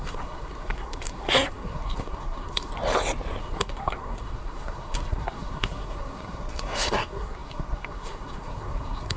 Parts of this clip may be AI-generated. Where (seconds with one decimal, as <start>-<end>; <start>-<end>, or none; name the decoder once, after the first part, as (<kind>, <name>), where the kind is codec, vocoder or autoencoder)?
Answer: 0.0-2.7 (codec, SNAC); 3.4-9.2